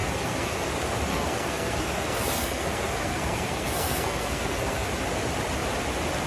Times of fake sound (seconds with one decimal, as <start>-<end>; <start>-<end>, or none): 0.0-0.7; 1.1-4.9